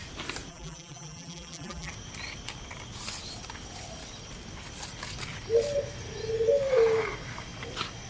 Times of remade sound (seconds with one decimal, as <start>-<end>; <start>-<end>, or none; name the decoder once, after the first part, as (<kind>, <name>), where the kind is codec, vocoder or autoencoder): 0.5-1.9 (vocoder, BigVGAN v2)